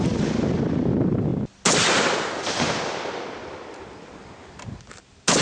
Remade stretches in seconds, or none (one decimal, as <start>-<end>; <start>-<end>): none